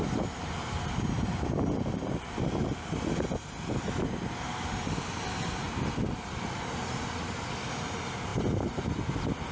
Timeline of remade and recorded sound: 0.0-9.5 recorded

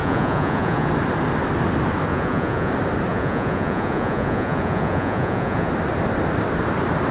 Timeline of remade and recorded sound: 0.0-0.9 remade; 0.9-2.1 recorded; 2.1-2.7 remade; 2.7-3.1 recorded; 3.1-5.7 remade; 5.7-7.1 recorded

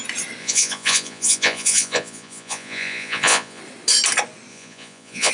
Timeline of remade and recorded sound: 0.0-0.4 recorded; 0.4-3.6 remade; 3.6-4.5 recorded; 4.5-5.3 remade

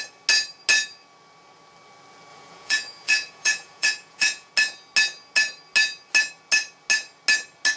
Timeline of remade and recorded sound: 0.0-2.3 recorded; 2.3-4.5 remade; 4.5-7.8 recorded